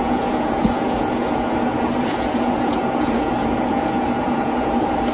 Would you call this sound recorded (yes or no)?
no